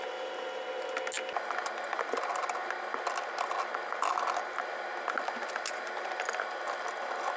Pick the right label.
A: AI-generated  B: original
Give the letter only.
B